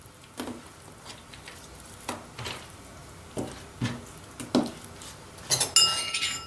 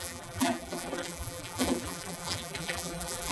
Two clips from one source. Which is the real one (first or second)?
first